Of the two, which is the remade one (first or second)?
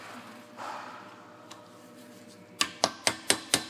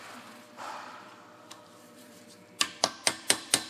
second